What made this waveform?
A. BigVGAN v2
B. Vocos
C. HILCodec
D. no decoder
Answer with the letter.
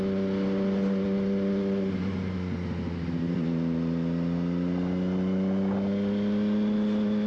D